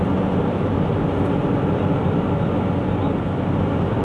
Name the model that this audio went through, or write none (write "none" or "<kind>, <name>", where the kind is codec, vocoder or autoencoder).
none